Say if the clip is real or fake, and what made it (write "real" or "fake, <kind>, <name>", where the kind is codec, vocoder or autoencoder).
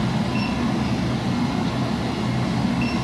real